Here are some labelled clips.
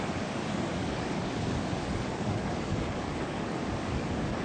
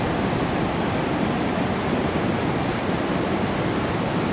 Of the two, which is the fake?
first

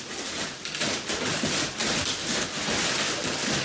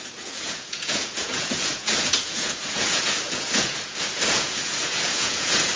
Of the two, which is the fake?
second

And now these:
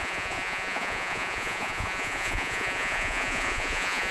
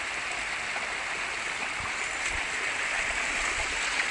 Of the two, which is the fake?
first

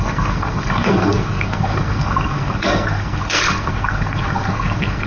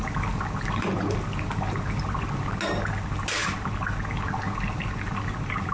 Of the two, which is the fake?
first